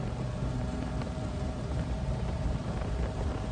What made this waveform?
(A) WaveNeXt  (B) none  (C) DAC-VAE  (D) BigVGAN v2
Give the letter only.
D